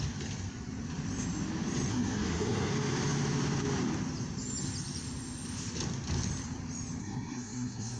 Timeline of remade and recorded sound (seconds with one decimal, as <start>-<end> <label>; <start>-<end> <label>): 0.0-1.9 recorded; 1.9-2.7 remade; 2.7-7.0 recorded; 7.0-8.0 remade

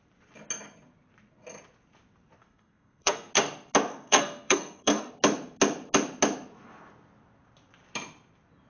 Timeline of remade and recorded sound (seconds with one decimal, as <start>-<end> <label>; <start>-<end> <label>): 0.0-2.4 recorded; 2.4-3.3 remade; 3.3-3.9 recorded; 3.9-5.1 remade; 5.1-8.7 recorded

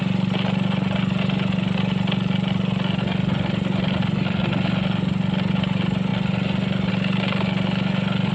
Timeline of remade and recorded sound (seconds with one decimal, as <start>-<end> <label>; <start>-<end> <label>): 0.0-8.3 recorded

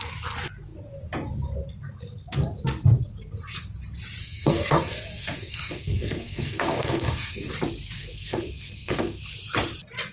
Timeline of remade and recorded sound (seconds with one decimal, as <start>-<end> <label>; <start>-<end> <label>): 0.0-4.2 recorded; 4.2-7.5 remade; 7.5-8.0 recorded; 8.0-9.2 remade; 9.2-10.1 recorded

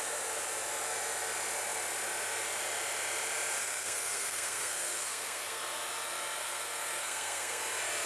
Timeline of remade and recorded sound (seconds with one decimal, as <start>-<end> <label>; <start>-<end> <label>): 0.0-3.6 recorded; 3.6-5.6 remade; 5.6-6.4 recorded; 6.4-7.6 remade; 7.6-8.1 recorded